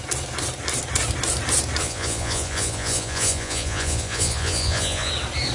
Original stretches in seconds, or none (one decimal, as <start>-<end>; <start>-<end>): 0.0-1.8; 5.1-5.5